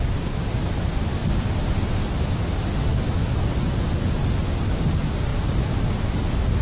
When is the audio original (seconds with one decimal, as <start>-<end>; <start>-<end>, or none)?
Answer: 0.0-5.3; 5.8-6.6